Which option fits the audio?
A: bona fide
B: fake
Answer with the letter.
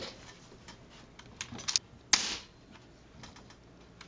A